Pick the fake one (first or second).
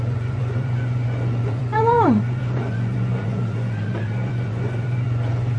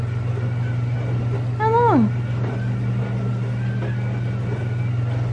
first